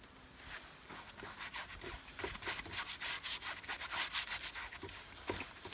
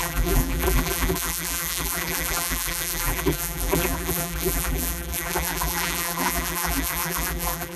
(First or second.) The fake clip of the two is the second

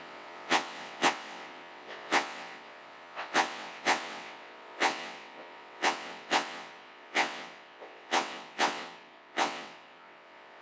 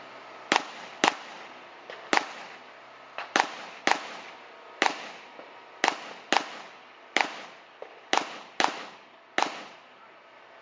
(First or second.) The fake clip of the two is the first